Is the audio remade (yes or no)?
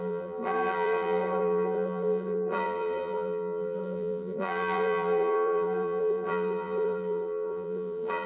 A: yes